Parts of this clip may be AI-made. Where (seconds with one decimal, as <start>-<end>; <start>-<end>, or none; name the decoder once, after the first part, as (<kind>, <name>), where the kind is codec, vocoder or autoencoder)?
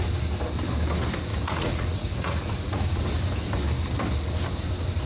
1.3-3.0 (vocoder, Vocos)